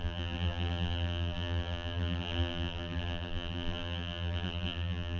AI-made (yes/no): yes